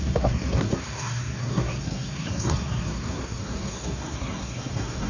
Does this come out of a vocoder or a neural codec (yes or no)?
yes